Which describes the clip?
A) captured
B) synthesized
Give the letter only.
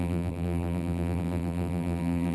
B